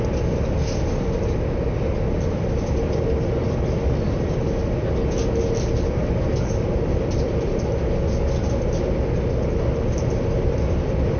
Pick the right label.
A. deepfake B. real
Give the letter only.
B